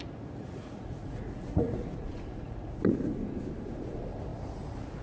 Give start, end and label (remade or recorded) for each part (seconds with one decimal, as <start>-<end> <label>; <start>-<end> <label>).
0.0-0.4 recorded; 0.4-2.8 remade; 2.8-5.0 recorded